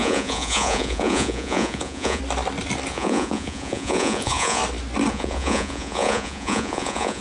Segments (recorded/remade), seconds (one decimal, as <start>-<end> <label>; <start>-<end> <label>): 0.0-2.2 remade; 2.2-2.9 recorded; 2.9-4.6 remade; 4.6-5.1 recorded; 5.1-7.2 remade